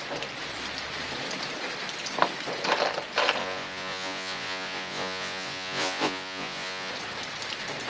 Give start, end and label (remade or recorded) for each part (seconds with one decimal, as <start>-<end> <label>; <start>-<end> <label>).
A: 0.0-3.4 recorded; 3.4-6.9 remade; 6.9-7.9 recorded